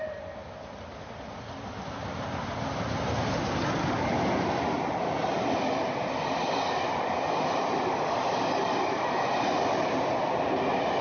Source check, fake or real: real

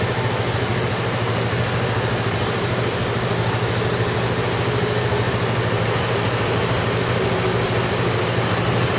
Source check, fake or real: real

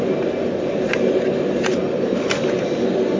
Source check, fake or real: real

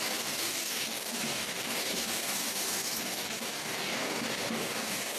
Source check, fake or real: fake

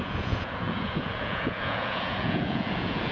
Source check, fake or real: fake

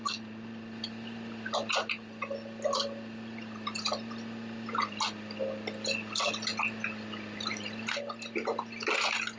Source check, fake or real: real